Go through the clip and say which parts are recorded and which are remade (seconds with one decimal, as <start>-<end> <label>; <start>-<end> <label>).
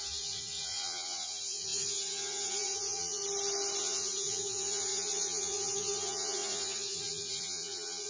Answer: 0.0-3.2 remade; 3.2-3.8 recorded; 3.8-8.1 remade